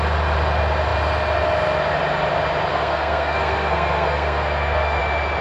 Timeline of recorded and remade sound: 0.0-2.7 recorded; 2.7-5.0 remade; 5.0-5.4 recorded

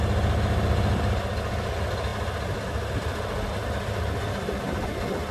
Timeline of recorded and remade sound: 0.0-5.3 recorded

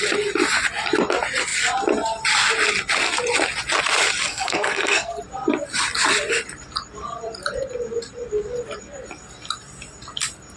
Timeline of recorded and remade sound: 0.0-4.3 recorded; 4.3-5.2 remade; 5.2-10.6 recorded

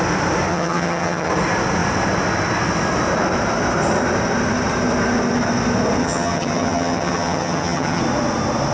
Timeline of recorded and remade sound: 0.0-0.5 recorded; 0.5-1.3 remade; 1.3-6.0 recorded; 6.0-8.0 remade; 8.0-8.7 recorded

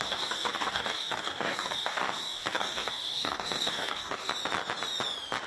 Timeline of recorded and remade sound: 0.0-4.3 remade; 4.3-5.5 recorded